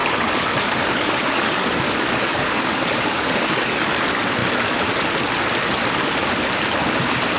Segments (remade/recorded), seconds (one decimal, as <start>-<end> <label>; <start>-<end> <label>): 0.0-3.9 remade; 3.9-7.4 recorded